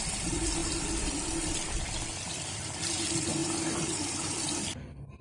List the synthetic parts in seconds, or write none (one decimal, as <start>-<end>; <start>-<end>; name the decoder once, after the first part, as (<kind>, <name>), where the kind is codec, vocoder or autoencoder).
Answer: 0.6-2.9 (vocoder, BigVGAN v2)

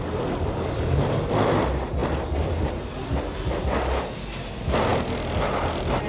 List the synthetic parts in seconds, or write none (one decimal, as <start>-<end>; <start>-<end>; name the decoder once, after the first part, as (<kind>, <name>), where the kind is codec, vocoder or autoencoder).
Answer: none

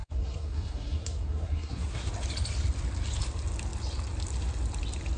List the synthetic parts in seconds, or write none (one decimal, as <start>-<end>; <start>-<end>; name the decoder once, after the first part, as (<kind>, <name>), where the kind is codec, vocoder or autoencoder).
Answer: 0.0-2.1 (codec, SNAC)

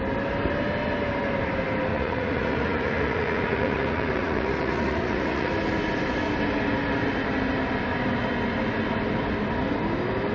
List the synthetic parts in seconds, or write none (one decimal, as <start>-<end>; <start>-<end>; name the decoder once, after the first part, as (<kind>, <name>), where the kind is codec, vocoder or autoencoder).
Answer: 1.9-5.5 (vocoder, Vocos)